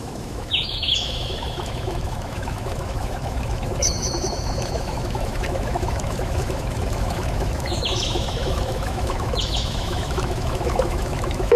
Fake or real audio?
fake